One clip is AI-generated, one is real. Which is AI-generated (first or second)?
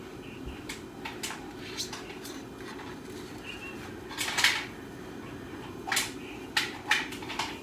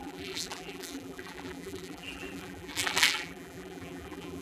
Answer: second